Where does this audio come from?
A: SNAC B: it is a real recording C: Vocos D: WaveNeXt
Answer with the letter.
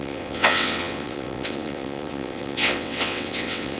D